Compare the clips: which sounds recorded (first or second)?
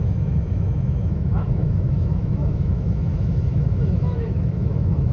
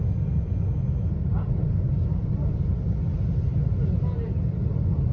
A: second